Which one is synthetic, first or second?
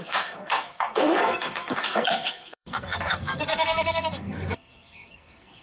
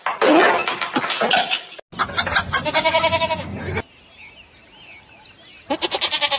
first